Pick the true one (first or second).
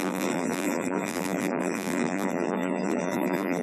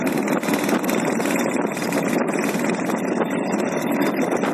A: second